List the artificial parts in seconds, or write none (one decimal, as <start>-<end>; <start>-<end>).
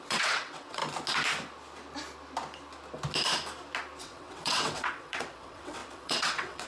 0.0-0.8; 4.0-6.7